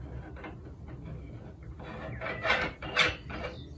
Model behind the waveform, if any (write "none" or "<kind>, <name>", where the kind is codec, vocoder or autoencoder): none